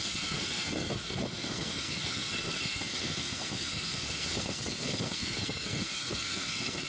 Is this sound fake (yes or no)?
yes